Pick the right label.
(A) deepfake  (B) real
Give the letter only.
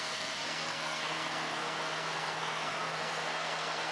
A